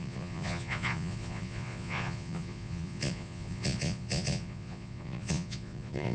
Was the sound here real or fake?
fake